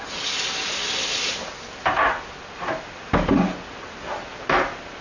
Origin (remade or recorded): recorded